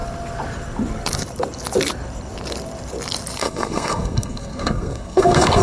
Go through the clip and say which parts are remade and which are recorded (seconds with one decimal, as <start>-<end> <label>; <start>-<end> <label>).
0.0-3.4 recorded; 3.4-5.6 remade